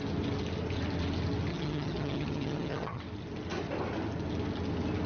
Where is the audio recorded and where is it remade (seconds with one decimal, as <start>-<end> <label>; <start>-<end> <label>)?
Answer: 0.0-1.5 recorded; 1.5-3.0 remade; 3.0-5.1 recorded